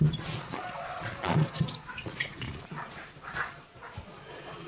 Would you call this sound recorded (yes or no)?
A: no